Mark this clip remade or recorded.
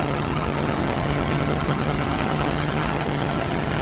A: remade